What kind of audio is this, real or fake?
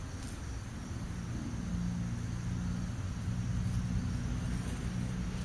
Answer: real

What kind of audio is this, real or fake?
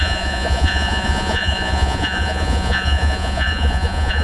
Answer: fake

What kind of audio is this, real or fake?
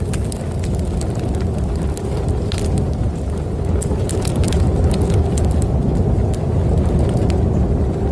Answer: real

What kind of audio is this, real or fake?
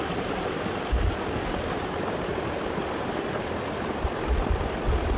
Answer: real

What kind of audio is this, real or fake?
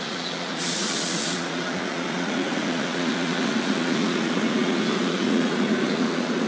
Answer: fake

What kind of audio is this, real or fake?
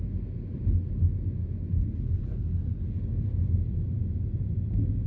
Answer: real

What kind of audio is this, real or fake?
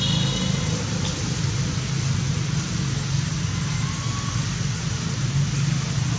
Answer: real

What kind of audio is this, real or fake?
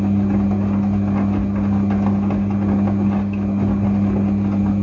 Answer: real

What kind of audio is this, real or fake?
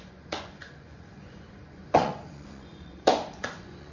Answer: fake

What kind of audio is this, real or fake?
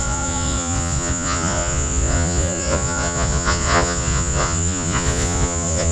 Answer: fake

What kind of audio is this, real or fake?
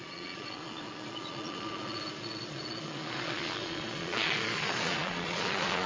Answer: fake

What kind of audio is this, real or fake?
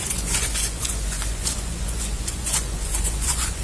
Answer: fake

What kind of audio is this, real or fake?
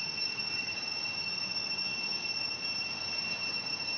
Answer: real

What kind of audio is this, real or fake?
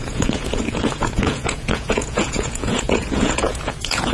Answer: fake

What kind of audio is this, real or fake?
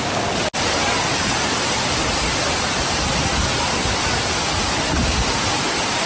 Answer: real